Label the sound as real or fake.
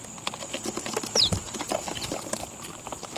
real